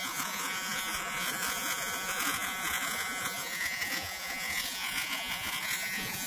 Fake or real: fake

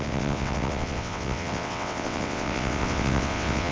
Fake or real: fake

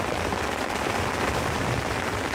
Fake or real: fake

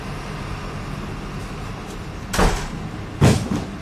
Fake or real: real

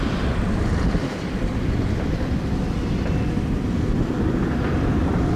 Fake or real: real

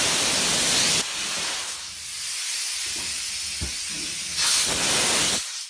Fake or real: real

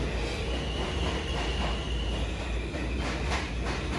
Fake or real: real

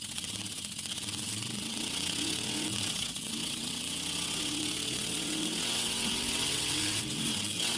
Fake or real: fake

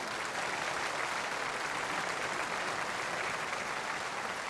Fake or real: real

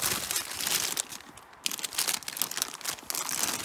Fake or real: real